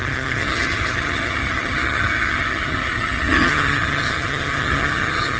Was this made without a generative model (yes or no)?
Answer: no